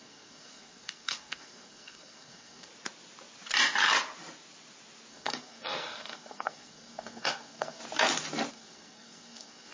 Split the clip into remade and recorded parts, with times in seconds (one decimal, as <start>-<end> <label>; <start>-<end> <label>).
0.0-2.7 remade; 2.7-5.1 recorded; 5.1-7.8 remade; 7.8-8.5 recorded; 8.5-9.7 remade